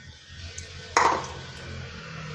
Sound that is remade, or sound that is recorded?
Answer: recorded